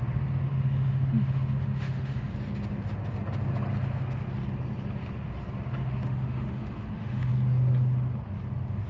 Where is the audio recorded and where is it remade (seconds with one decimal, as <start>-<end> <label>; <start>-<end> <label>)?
0.0-0.5 recorded; 0.5-2.3 remade; 2.3-5.8 recorded; 5.8-7.3 remade; 7.3-8.9 recorded